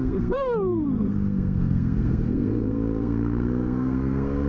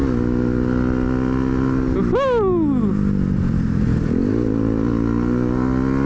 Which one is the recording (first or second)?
second